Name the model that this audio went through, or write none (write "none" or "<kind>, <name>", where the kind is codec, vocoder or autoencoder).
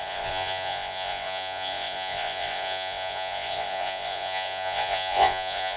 vocoder, Vocos